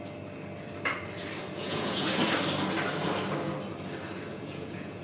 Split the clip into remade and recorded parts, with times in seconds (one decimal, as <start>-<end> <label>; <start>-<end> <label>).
0.0-1.6 recorded; 1.6-2.2 remade; 2.2-4.3 recorded; 4.3-5.0 remade